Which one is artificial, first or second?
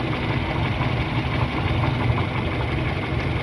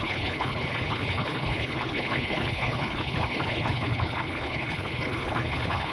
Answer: second